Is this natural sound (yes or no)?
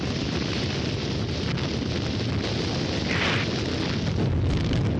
yes